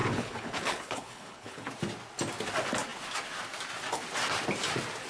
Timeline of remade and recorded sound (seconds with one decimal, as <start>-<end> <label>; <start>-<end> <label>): 0.0-1.7 remade; 1.7-5.1 recorded